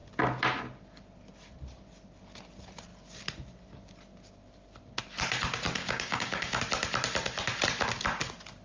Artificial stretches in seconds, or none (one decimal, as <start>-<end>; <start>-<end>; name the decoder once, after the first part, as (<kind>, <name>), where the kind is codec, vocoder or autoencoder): 5.8-6.6 (codec, DAC)